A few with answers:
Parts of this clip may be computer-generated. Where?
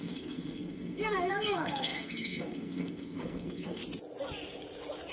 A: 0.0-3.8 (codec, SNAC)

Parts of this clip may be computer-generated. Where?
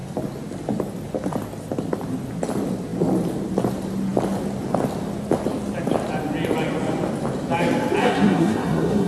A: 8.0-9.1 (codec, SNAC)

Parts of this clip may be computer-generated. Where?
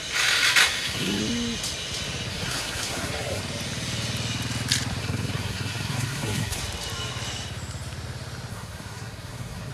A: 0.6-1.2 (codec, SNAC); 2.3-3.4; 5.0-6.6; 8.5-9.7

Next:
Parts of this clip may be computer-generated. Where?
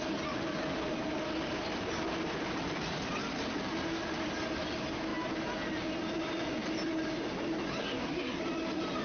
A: 7.8-8.4 (codec, SNAC)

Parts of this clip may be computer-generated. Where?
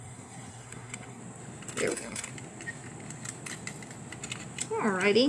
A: 0.0-1.2 (codec, SNAC); 1.9-2.3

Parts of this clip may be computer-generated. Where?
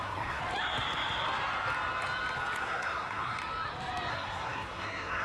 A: 0.0-0.4 (codec, SNAC); 2.6-3.4; 4.1-5.2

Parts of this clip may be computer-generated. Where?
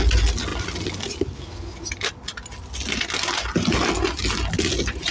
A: none